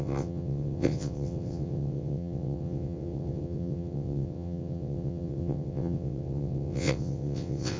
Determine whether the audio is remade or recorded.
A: remade